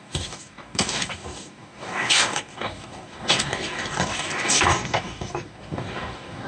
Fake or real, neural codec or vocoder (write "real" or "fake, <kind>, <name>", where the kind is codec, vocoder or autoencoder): fake, codec, DAC